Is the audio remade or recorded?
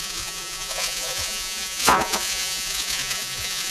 remade